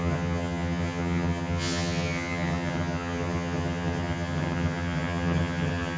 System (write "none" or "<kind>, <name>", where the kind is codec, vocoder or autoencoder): vocoder, HiFi-GAN